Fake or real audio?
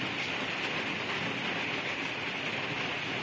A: real